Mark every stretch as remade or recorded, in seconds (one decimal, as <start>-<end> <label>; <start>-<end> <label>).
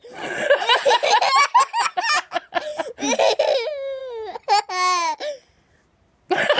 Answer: 0.0-6.6 recorded